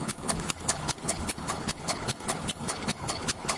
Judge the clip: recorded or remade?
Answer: remade